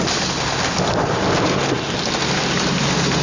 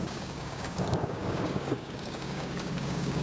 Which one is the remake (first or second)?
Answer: second